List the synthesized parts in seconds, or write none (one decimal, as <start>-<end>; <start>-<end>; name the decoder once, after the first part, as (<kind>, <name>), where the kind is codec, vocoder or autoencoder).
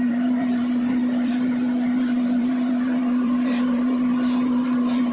0.0-5.1 (vocoder, BigVGAN v2)